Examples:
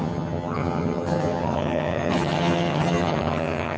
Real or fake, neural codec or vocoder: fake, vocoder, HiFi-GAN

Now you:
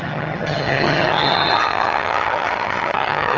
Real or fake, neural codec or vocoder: fake, vocoder, HiFi-GAN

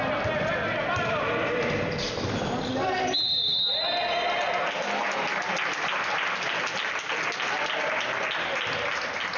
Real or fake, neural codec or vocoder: real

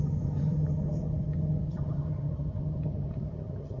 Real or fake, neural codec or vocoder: fake, vocoder, HiFi-GAN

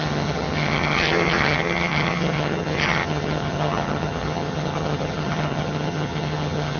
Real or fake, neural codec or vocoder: fake, vocoder, HiFi-GAN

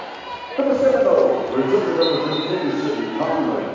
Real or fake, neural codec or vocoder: real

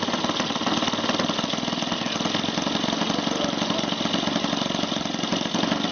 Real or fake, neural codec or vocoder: real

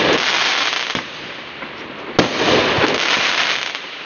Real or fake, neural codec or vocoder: real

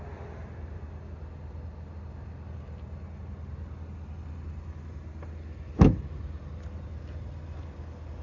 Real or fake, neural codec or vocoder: real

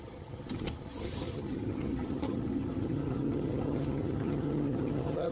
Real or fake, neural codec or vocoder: fake, vocoder, HiFi-GAN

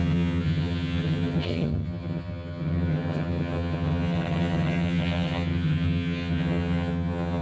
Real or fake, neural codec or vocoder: fake, vocoder, HiFi-GAN